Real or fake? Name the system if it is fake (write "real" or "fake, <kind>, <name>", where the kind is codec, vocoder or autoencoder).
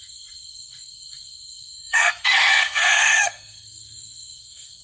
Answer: fake, codec, SNAC